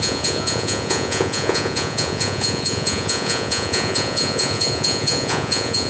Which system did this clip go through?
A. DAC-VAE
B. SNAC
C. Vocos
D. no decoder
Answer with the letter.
C